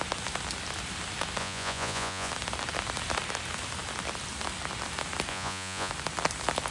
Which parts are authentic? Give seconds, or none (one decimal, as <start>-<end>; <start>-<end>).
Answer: 0.0-1.4; 2.3-5.3; 5.9-6.7